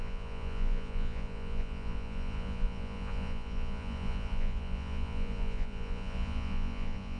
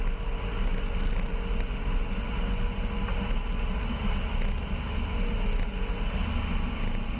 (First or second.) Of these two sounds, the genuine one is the second